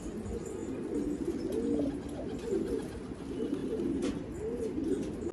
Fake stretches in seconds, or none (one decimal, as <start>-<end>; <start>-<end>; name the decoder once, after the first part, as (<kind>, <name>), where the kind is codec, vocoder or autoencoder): none